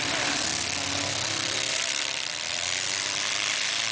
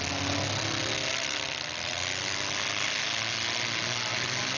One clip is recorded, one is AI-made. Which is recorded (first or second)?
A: second